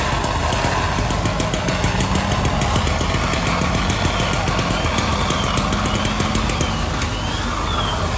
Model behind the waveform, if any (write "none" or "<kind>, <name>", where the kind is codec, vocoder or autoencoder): none